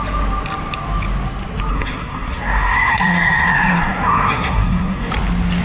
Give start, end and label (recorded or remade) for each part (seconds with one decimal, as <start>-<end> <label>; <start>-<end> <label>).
0.0-1.7 recorded; 1.7-5.1 remade; 5.1-5.6 recorded